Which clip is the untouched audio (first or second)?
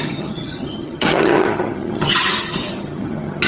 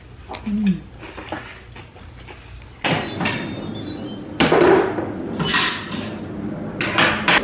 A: second